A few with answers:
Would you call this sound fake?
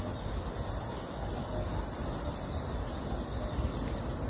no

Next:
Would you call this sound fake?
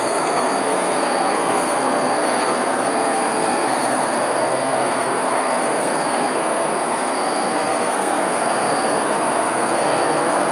yes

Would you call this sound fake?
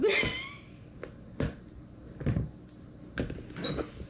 no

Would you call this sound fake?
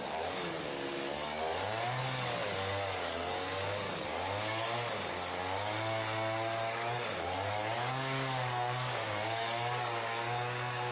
yes